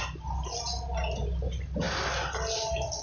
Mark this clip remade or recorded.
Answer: recorded